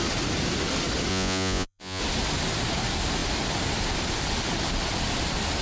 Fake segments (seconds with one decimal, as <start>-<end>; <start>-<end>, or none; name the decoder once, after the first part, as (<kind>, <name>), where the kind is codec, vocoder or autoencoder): 1.1-2.0 (vocoder, Vocos)